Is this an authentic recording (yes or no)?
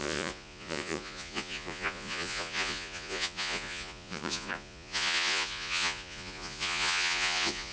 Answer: no